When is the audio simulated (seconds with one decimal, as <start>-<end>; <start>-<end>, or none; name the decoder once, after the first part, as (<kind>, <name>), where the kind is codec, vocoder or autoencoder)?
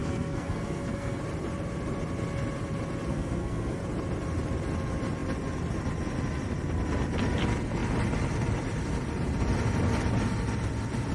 0.0-1.2 (codec, SNAC); 3.1-3.8